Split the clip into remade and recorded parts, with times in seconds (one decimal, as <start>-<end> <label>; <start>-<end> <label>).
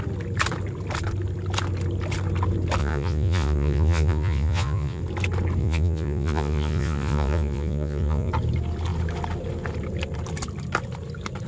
0.0-2.8 recorded; 2.8-5.0 remade; 5.0-5.6 recorded; 5.6-8.3 remade; 8.3-11.5 recorded